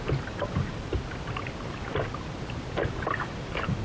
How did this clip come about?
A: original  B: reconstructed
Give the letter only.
A